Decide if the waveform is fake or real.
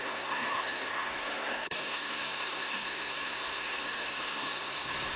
fake